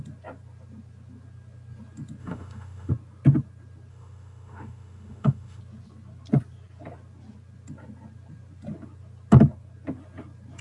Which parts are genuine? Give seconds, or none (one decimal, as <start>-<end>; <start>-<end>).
0.0-2.2; 2.9-3.9; 5.6-10.6